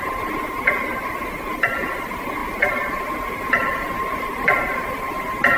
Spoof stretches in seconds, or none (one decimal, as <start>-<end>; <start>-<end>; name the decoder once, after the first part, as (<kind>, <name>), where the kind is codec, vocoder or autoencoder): none

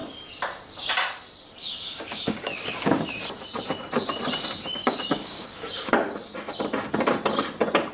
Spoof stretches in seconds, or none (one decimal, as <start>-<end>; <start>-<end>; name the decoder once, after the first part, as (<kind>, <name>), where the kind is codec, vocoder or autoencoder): 1.6-3.2 (codec, DAC); 4.8-5.9

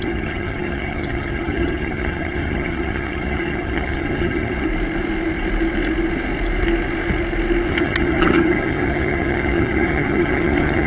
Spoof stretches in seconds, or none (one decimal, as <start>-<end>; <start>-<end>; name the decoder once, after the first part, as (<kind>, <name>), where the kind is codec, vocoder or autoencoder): 0.0-4.7 (vocoder, HiFi-GAN); 7.7-10.9